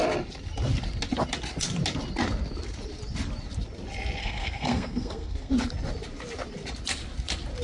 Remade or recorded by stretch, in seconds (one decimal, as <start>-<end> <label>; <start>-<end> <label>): 0.0-4.2 recorded; 4.2-5.5 remade; 5.5-7.6 recorded